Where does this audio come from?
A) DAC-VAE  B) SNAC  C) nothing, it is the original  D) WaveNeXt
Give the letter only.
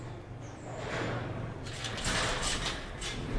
C